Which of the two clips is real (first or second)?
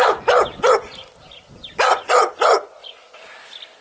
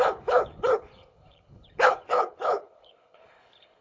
first